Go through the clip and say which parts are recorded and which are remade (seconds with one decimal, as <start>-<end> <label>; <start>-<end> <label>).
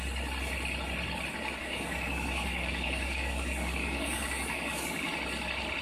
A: 0.0-1.6 recorded; 1.6-5.1 remade; 5.1-5.8 recorded